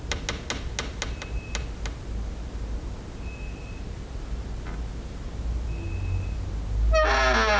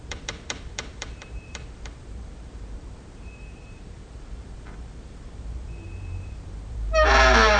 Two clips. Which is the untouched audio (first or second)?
first